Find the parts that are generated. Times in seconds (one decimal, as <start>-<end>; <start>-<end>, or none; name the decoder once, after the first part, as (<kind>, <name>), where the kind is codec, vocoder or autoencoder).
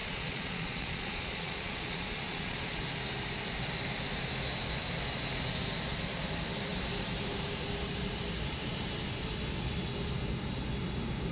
0.0-2.8 (vocoder, Vocos)